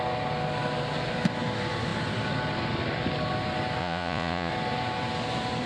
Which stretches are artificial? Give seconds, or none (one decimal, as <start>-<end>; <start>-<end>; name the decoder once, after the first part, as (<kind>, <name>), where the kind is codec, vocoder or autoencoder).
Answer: 3.8-4.5 (vocoder, Vocos)

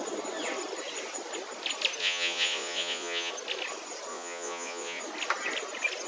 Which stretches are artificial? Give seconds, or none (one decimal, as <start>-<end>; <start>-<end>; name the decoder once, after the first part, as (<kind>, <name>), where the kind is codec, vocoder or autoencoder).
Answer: 2.0-3.3 (vocoder, Vocos); 4.1-5.0

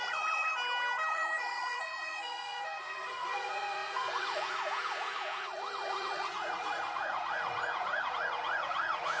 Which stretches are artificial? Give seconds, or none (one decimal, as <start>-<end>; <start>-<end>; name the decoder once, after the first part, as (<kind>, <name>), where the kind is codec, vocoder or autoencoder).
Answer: 0.0-0.5 (vocoder, Vocos); 1.1-9.2